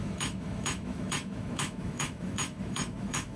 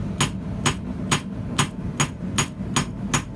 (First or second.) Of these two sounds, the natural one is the second